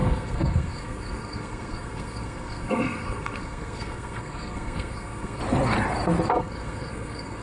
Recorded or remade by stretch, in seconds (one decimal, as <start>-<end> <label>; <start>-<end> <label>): 0.0-5.4 remade; 5.4-6.3 recorded; 6.3-7.4 remade